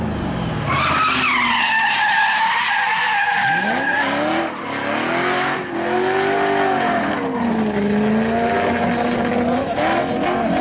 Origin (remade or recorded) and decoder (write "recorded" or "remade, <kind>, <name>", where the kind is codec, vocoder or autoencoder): recorded